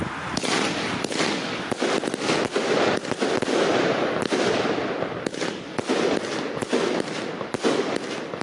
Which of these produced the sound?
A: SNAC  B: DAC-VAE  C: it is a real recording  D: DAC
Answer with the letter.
C